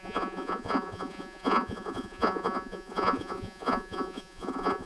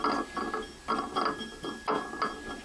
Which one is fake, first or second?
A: first